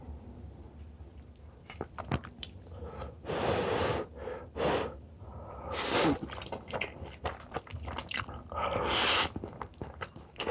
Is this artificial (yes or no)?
yes